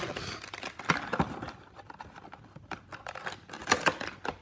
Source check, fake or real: real